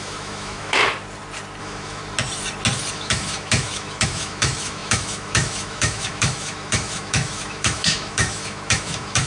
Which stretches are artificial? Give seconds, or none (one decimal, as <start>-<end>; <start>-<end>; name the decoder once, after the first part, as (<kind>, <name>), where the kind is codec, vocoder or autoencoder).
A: 0.0-0.8 (autoencoder, DAC-VAE); 1.6-2.0; 2.9-9.3

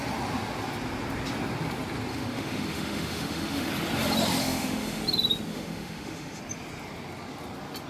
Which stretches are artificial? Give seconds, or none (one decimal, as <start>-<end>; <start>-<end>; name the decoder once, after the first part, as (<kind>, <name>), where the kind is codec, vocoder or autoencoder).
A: 2.1-3.7 (autoencoder, DAC-VAE); 4.4-5.0; 5.5-6.4

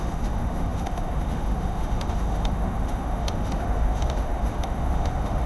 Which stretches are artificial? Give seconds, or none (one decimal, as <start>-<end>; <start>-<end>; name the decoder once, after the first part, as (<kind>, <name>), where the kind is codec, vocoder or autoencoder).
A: 0.0-5.5 (autoencoder, DAC-VAE)

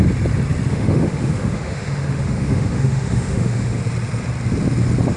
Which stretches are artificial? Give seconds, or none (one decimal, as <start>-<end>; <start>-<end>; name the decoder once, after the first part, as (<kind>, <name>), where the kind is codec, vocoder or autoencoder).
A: 0.7-3.8 (autoencoder, DAC-VAE)

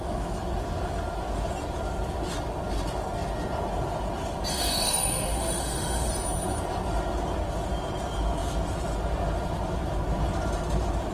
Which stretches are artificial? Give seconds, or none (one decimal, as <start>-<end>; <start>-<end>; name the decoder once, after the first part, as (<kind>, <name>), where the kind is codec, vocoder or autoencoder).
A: 4.5-6.1 (autoencoder, DAC-VAE)

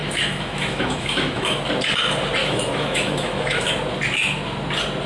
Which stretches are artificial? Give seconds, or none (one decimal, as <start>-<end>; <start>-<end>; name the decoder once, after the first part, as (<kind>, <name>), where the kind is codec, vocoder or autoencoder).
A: 0.0-1.6 (autoencoder, DAC-VAE); 2.4-3.7

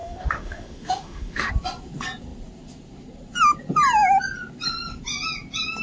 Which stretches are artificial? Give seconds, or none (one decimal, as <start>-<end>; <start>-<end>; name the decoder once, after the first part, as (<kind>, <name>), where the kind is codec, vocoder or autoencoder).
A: 0.0-1.5 (autoencoder, DAC-VAE)